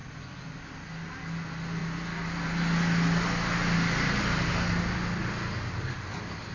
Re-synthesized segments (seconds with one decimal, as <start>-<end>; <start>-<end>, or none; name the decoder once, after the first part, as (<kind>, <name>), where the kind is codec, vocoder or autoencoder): none